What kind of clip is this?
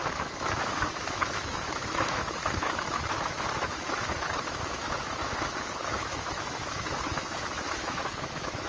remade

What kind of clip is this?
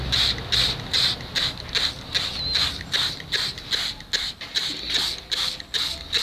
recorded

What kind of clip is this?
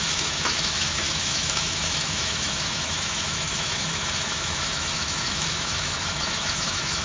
remade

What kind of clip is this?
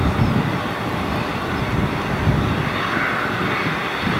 recorded